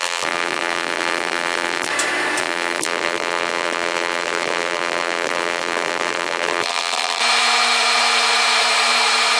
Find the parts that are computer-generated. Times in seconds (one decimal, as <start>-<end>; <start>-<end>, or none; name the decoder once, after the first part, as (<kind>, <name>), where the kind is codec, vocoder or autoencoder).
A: 0.0-1.9 (vocoder, BigVGAN v2); 2.4-7.2